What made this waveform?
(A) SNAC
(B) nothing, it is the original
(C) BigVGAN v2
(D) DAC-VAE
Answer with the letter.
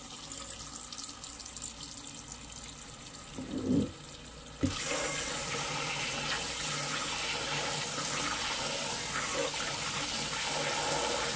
B